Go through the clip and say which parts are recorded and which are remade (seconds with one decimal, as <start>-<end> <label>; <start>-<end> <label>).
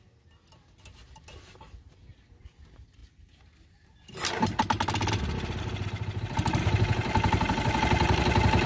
0.0-8.7 recorded